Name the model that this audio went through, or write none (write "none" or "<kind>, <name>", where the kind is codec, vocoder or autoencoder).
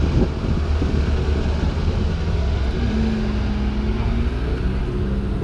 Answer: none